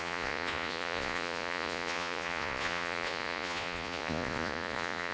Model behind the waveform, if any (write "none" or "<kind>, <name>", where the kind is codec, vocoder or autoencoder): vocoder, Vocos